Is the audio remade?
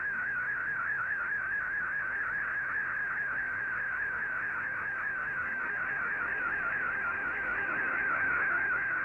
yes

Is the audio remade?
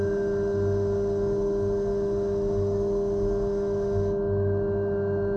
no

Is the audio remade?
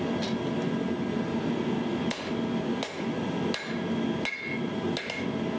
no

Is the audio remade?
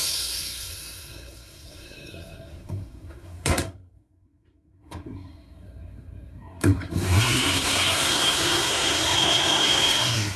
yes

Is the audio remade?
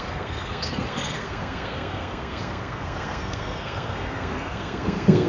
yes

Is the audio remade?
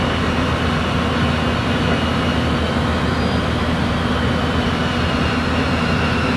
no